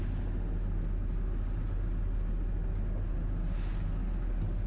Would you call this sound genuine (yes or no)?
yes